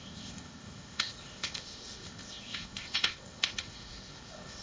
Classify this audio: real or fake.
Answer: fake